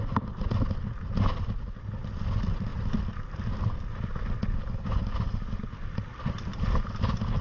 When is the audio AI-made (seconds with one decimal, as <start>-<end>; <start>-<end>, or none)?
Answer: none